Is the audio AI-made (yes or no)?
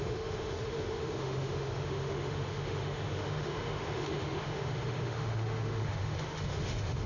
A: yes